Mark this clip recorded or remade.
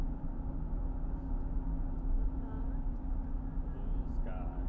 recorded